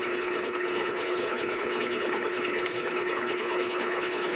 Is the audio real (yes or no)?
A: no